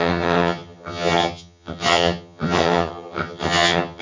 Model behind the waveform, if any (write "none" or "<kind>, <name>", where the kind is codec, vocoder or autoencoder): vocoder, HiFi-GAN